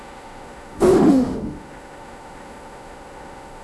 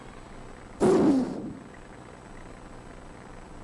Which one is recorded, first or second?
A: second